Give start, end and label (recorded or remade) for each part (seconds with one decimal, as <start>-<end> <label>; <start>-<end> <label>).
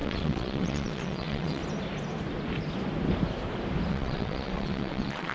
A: 0.0-1.6 remade; 1.6-3.9 recorded; 3.9-5.3 remade